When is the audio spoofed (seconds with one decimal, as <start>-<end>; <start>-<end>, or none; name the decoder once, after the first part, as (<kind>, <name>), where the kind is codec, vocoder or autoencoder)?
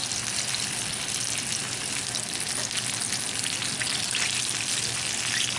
none